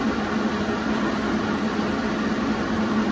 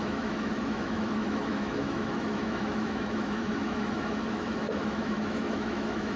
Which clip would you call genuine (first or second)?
first